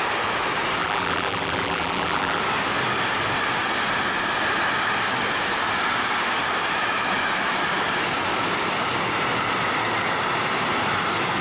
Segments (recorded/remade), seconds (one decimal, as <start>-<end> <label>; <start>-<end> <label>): 0.0-0.8 recorded; 0.8-2.4 remade; 2.4-11.4 recorded